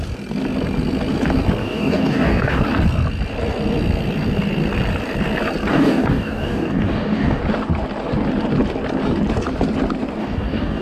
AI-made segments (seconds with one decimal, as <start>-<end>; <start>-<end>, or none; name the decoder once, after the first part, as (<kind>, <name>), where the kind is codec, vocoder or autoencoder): 1.6-2.6 (codec, DAC); 5.7-7.4; 10.2-10.8